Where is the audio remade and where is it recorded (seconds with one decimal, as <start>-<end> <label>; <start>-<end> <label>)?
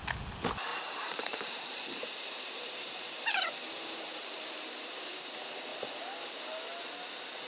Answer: 0.0-0.7 recorded; 0.7-5.2 remade; 5.2-7.5 recorded